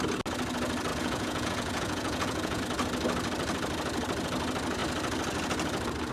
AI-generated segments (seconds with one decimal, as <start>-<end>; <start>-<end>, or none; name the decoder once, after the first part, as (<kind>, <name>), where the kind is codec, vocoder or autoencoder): 0.9-2.6 (vocoder, Vocos)